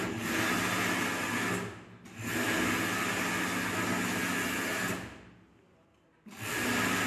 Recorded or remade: recorded